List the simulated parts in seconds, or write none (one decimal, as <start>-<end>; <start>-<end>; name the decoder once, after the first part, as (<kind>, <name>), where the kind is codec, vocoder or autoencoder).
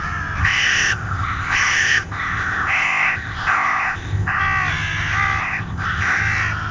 0.4-4.4 (codec, ZipCodec); 5.4-6.2